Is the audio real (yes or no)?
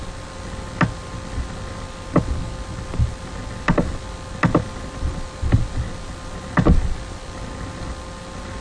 yes